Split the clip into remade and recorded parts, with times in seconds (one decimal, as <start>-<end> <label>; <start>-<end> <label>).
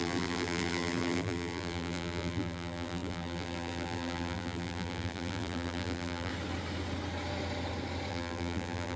0.0-6.3 remade; 6.3-8.1 recorded; 8.1-9.0 remade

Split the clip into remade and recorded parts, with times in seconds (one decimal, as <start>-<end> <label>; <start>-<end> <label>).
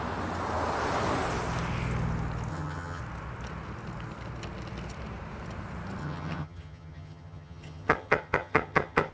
0.0-2.5 recorded; 2.5-3.0 remade; 3.0-6.0 recorded; 6.0-9.1 remade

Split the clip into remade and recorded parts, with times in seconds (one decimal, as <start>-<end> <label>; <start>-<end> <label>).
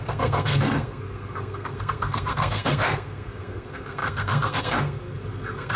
0.0-5.8 remade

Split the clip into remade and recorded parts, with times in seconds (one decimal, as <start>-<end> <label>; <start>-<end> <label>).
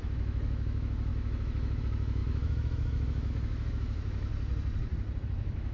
0.0-4.3 remade; 4.3-5.2 recorded; 5.2-5.7 remade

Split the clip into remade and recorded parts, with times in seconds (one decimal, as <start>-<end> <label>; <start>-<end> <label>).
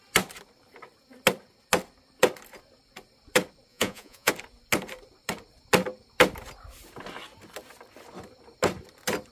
0.0-3.7 recorded; 3.7-4.3 remade; 4.3-9.3 recorded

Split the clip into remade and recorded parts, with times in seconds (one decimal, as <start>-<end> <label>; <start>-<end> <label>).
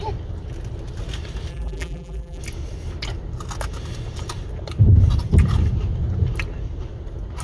0.0-1.5 recorded; 1.5-2.4 remade; 2.4-7.4 recorded